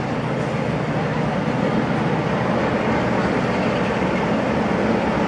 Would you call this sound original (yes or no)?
yes